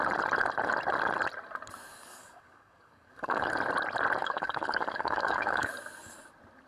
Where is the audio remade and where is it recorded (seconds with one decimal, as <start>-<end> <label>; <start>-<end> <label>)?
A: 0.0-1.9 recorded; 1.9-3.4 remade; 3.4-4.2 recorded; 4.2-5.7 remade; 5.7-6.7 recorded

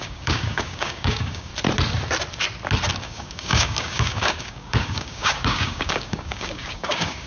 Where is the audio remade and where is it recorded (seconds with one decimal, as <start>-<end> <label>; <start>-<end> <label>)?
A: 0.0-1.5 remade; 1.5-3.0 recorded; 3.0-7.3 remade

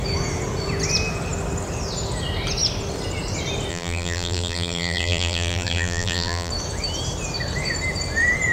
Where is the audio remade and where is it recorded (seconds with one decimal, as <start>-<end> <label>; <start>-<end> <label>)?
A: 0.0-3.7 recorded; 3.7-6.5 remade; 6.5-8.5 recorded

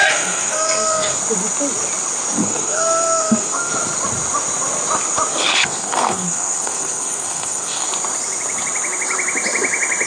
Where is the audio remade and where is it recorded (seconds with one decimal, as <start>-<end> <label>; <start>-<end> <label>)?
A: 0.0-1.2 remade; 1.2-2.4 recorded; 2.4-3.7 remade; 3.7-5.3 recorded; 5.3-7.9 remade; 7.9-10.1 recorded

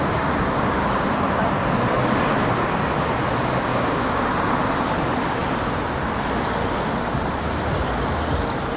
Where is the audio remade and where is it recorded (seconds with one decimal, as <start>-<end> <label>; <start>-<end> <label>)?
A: 0.0-1.1 remade; 1.1-3.7 recorded; 3.7-4.3 remade; 4.3-8.8 recorded

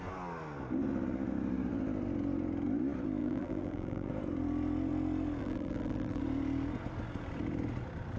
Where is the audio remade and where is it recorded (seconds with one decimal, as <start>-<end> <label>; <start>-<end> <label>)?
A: 0.0-3.2 recorded; 3.2-4.1 remade; 4.1-5.4 recorded; 5.4-6.2 remade; 6.2-8.2 recorded